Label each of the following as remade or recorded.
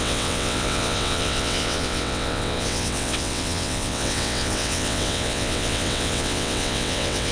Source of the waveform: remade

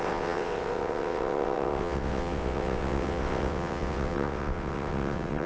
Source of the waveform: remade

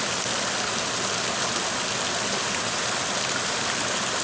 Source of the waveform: recorded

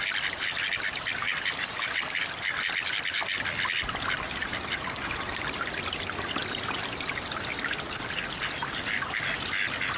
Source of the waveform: recorded